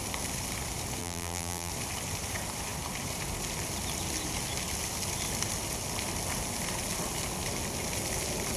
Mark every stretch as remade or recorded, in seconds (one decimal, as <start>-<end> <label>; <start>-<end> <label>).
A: 0.0-1.0 recorded; 1.0-1.7 remade; 1.7-8.6 recorded